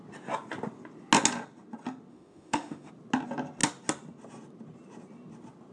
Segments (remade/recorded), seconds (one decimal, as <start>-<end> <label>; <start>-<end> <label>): 0.0-2.1 recorded; 2.1-2.9 remade; 2.9-5.7 recorded